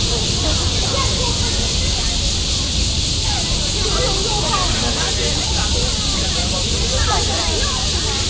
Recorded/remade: recorded